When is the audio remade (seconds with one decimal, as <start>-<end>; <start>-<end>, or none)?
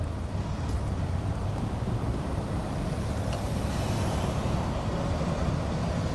1.4-4.7